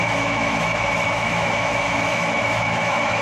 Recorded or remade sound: remade